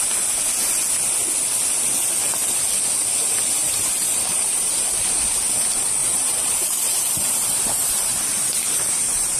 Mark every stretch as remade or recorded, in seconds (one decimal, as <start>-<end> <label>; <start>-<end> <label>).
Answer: 0.0-3.6 recorded; 3.6-5.4 remade; 5.4-6.0 recorded; 6.0-9.4 remade

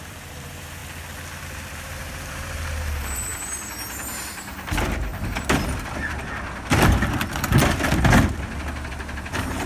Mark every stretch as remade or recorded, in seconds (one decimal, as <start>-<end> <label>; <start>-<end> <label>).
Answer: 0.0-0.8 remade; 0.8-1.4 recorded; 1.4-5.1 remade; 5.1-8.9 recorded; 8.9-9.7 remade

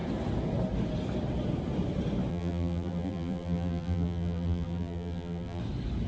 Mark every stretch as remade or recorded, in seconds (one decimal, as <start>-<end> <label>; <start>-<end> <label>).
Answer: 0.0-2.3 recorded; 2.3-5.6 remade; 5.6-6.1 recorded

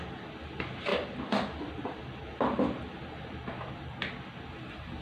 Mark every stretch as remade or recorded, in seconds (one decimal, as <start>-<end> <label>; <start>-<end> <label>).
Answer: 0.0-0.9 remade; 0.9-3.7 recorded; 3.7-5.0 remade

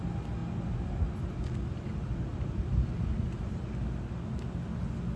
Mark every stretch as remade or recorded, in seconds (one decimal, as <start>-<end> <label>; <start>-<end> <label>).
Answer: 0.0-2.3 recorded; 2.3-3.0 remade; 3.0-5.2 recorded

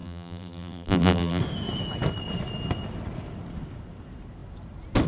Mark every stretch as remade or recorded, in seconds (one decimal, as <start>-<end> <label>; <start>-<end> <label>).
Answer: 0.0-1.4 remade; 1.4-5.1 recorded

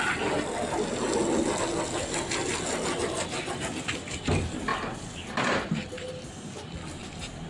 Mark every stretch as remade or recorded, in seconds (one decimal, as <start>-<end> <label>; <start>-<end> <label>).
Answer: 0.0-7.5 recorded